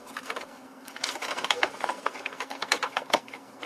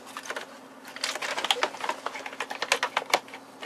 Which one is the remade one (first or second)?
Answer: first